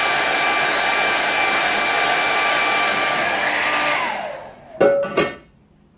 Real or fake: real